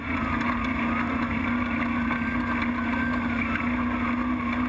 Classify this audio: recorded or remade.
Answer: recorded